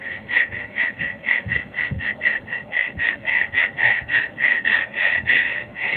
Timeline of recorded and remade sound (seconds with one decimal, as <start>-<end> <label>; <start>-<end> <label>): 0.0-6.0 remade